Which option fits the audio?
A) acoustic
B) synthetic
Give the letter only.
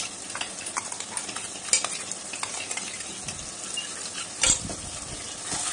A